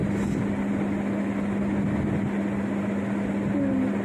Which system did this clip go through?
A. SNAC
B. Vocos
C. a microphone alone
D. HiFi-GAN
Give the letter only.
C